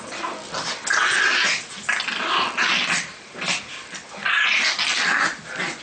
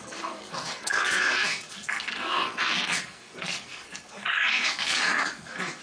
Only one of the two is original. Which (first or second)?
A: first